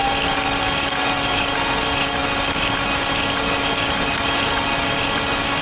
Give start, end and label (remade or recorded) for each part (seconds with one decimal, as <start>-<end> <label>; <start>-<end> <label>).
0.0-5.6 recorded